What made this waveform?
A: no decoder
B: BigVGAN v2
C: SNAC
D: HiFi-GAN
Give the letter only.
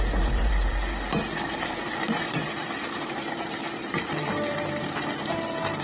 B